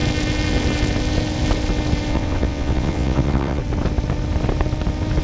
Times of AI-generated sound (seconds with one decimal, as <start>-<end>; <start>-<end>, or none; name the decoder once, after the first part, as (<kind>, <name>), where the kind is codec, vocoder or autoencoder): 2.1-3.6 (vocoder, WaveNeXt)